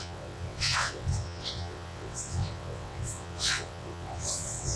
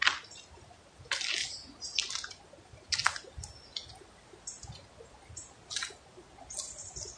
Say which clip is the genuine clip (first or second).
second